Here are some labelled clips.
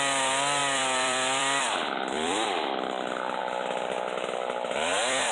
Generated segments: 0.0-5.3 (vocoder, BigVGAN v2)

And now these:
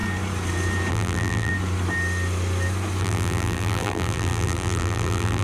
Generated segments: 0.9-1.5 (vocoder, BigVGAN v2); 3.0-5.4

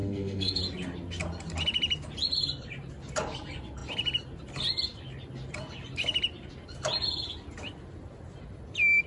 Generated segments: 0.0-0.6 (codec, SNAC)

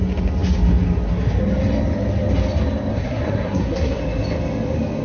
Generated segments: 2.9-4.0 (codec, SNAC)

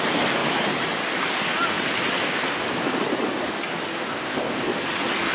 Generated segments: 4.1-4.7 (codec, ZipCodec)

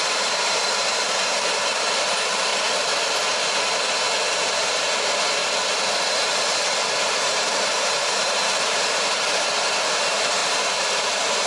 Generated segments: 0.0-2.5 (vocoder, BigVGAN v2); 4.2-5.4; 7.2-10.4; 10.9-11.5

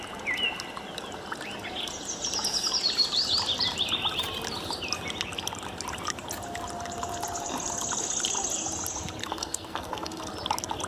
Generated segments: 9.2-10.2 (codec, SNAC)